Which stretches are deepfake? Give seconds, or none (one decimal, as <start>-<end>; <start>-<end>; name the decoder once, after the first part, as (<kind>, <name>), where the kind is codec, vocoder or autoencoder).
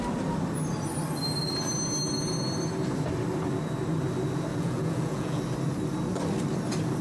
4.5-5.4 (vocoder, Vocos)